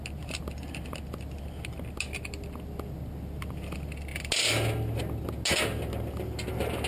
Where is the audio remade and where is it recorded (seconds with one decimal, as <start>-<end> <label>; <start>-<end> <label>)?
0.0-6.9 recorded